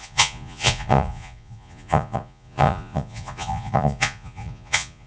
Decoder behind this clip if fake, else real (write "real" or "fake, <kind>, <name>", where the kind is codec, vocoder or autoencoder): fake, vocoder, Vocos